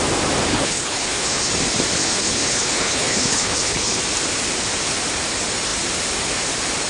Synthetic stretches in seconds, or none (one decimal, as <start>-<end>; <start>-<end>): 0.5-1.5; 2.0-4.0